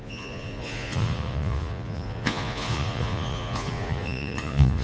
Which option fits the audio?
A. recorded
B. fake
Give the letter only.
B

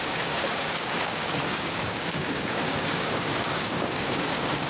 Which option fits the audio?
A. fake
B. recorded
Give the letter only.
A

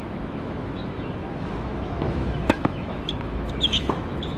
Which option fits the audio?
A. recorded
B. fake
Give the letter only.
B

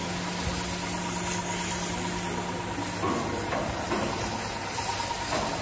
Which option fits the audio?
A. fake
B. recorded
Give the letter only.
B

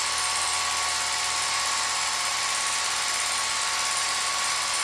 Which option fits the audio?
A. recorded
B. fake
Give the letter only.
A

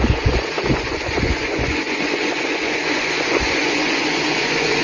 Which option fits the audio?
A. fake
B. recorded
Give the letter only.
A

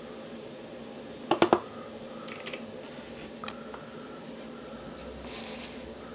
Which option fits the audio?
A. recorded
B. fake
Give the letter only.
A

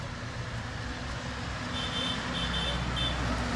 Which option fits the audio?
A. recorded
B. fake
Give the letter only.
A